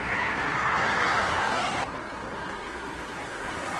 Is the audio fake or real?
fake